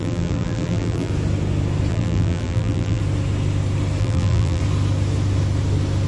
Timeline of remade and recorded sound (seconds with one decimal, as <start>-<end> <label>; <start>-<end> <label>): 0.0-1.1 remade; 1.1-1.9 recorded; 1.9-3.0 remade; 3.0-4.0 recorded; 4.0-4.6 remade; 4.6-6.1 recorded